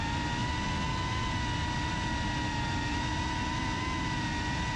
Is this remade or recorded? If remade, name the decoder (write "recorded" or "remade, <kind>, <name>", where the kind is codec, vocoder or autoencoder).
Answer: recorded